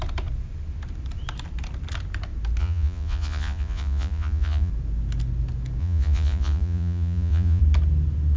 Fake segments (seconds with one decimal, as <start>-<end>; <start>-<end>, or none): 2.6-4.7; 5.8-7.6

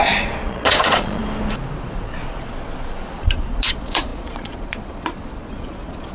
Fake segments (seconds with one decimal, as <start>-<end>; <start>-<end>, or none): 0.0-1.2; 1.8-6.1

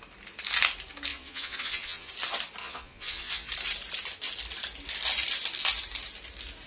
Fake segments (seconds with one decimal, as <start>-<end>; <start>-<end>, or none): 1.1-2.1; 2.6-3.5

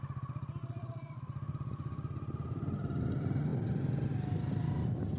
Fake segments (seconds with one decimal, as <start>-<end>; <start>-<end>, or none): 0.6-1.2

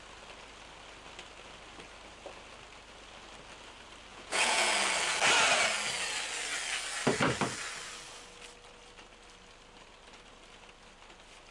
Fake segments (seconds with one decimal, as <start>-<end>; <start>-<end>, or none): 4.1-4.7

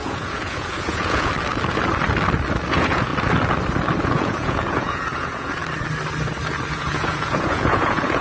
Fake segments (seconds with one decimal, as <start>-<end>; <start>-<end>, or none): 0.0-1.3; 2.7-3.1; 4.0-5.6; 6.7-8.2

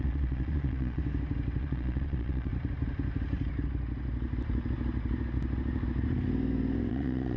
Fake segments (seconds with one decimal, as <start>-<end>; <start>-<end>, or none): 0.0-1.0; 1.6-2.5; 6.9-7.4